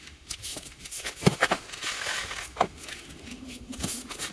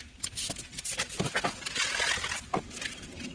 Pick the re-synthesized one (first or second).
first